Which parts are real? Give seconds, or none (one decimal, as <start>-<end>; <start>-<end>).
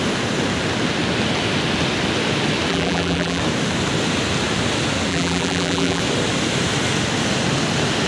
0.0-2.7; 3.4-5.1; 6.0-8.1